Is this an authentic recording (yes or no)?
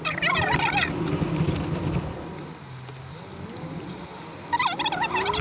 yes